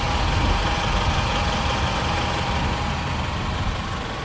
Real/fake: real